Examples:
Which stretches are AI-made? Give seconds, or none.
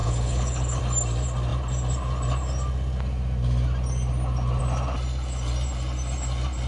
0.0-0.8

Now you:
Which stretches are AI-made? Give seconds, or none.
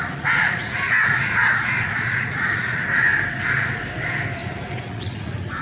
0.0-2.6; 4.4-5.6